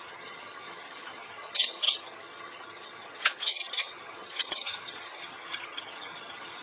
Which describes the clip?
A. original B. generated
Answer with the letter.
B